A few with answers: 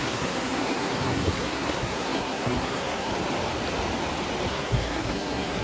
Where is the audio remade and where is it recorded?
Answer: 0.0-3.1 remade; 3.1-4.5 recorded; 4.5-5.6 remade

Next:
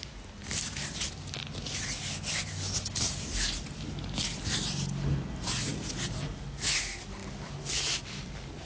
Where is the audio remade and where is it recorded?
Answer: 0.0-8.7 recorded